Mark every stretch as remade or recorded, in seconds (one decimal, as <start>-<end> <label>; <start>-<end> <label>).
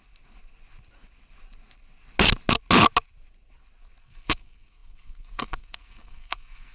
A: 0.0-4.0 recorded; 4.0-6.7 remade